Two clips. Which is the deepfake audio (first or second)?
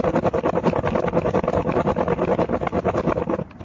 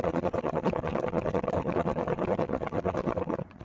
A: second